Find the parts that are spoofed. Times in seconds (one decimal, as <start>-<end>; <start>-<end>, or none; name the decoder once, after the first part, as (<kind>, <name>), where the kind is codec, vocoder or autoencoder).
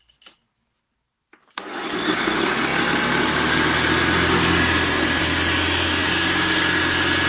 6.0-6.8 (codec, DAC)